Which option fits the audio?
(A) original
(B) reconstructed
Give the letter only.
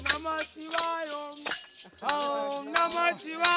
A